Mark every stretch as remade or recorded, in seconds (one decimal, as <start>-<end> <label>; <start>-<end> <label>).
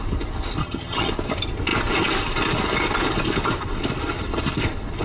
0.0-0.6 recorded; 0.6-1.1 remade; 1.1-5.0 recorded